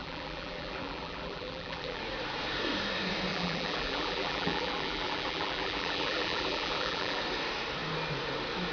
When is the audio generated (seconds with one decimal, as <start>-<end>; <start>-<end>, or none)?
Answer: 0.0-2.0; 3.3-7.2